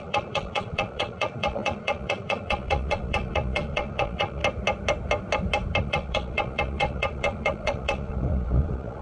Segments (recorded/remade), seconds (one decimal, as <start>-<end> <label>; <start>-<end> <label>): 0.0-4.4 remade; 4.4-5.8 recorded; 5.8-9.0 remade